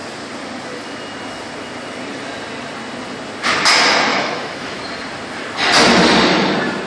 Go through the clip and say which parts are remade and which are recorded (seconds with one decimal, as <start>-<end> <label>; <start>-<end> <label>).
0.0-4.1 recorded; 4.1-4.8 remade; 4.8-6.9 recorded